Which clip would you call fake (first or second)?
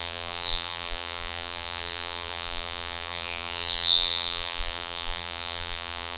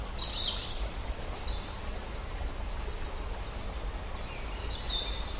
first